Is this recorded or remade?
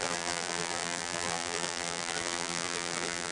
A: remade